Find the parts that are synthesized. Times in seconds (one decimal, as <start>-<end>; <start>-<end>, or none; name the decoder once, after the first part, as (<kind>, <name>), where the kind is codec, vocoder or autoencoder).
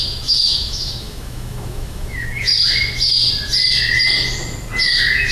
0.0-2.5 (autoencoder, DAC-VAE); 4.8-5.3